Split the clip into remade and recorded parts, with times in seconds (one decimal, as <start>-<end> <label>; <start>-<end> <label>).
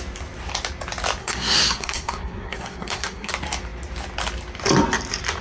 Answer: 0.0-1.2 recorded; 1.2-3.3 remade; 3.3-5.4 recorded